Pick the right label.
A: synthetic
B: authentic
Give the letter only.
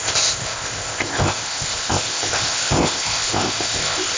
A